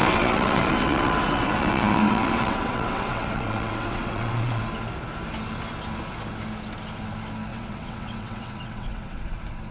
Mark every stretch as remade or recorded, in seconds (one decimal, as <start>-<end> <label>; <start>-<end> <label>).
0.0-4.6 remade; 4.6-7.5 recorded; 7.5-9.2 remade; 9.2-9.7 recorded